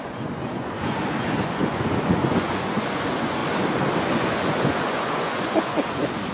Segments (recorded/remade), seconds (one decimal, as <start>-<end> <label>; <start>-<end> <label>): 0.0-3.4 remade; 3.4-4.0 recorded; 4.0-6.3 remade

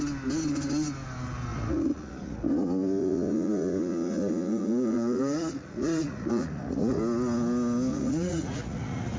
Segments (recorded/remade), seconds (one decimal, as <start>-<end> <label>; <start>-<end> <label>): 0.0-1.5 recorded; 1.5-2.5 remade; 2.5-3.0 recorded; 3.0-7.0 remade; 7.0-7.9 recorded; 7.9-9.2 remade

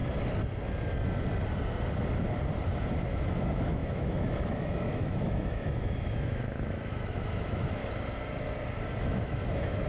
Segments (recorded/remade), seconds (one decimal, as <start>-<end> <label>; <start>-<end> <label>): 0.0-2.9 recorded; 2.9-7.8 remade; 7.8-9.0 recorded; 9.0-9.9 remade

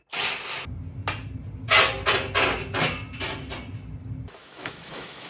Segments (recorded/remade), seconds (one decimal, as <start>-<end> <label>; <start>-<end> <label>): 0.0-4.4 recorded; 4.4-5.3 remade

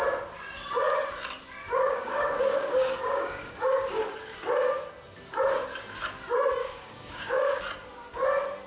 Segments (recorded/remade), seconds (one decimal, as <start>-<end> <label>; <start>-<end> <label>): 0.0-1.6 recorded; 1.6-3.5 remade; 3.5-6.6 recorded; 6.6-7.6 remade; 7.6-8.7 recorded

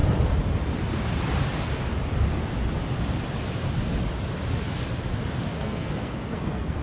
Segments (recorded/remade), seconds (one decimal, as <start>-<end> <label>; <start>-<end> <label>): 0.0-5.5 recorded; 5.5-6.8 remade

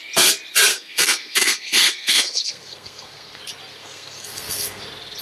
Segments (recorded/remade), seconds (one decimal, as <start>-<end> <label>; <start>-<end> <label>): 0.0-0.7 recorded; 0.7-3.4 remade; 3.4-3.8 recorded; 3.8-4.8 remade; 4.8-5.2 recorded

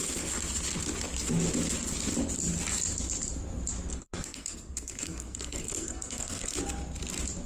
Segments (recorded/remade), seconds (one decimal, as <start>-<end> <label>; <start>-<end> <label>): 0.0-3.9 recorded; 3.9-6.6 remade; 6.6-7.5 recorded